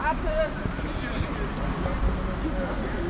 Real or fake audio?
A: real